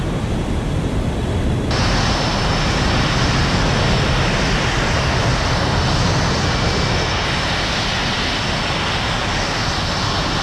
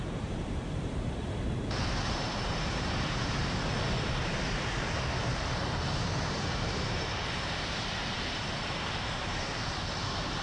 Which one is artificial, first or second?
second